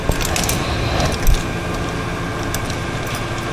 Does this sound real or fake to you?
real